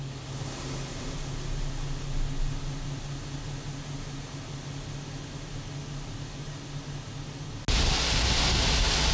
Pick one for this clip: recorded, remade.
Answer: recorded